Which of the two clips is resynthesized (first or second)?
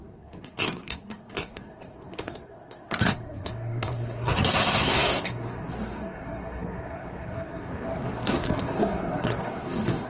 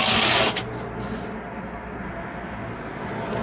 first